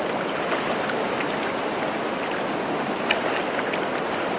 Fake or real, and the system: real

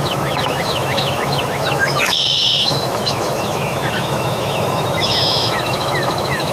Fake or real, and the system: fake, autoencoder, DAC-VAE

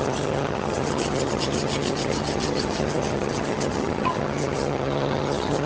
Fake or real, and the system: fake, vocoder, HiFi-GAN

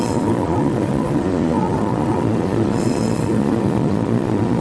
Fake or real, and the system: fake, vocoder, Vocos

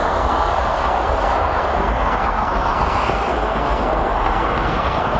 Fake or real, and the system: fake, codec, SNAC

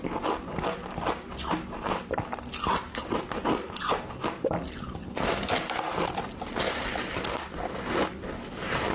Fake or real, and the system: real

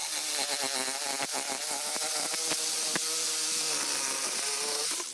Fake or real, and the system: real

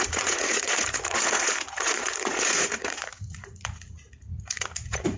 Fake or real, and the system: fake, vocoder, Vocos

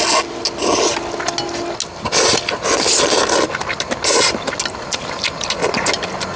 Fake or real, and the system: real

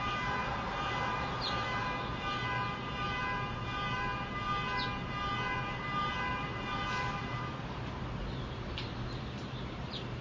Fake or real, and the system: fake, vocoder, BigVGAN v2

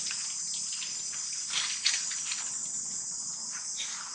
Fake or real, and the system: real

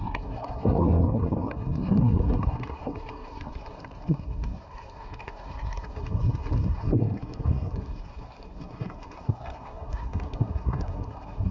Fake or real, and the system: fake, codec, SNAC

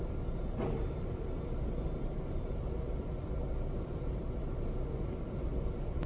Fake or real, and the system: real